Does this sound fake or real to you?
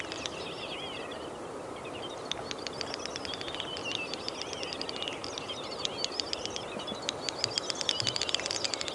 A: real